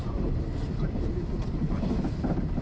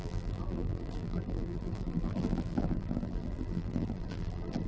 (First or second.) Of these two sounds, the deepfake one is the second